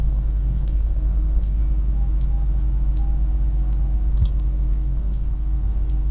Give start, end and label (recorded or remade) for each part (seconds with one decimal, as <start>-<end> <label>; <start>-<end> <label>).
0.0-1.6 remade; 1.6-4.7 recorded; 4.7-6.1 remade